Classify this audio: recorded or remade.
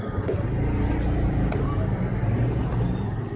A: recorded